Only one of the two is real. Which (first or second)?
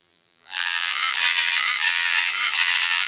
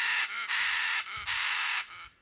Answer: second